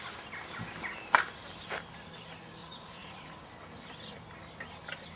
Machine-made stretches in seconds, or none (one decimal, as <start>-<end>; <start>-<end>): 2.6-3.5